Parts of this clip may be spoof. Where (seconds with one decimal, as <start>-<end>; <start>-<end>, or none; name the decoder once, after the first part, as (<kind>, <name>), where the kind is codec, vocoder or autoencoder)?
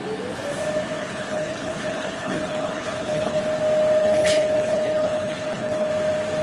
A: 1.0-3.4 (codec, HILCodec); 4.0-5.9